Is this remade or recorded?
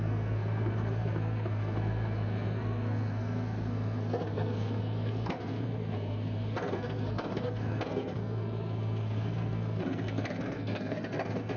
remade